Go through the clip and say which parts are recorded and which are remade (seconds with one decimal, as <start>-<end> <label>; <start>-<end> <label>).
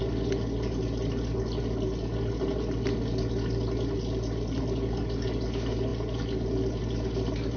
0.0-7.6 recorded